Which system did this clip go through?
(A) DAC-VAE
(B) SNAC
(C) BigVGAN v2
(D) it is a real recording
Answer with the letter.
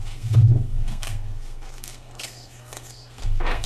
B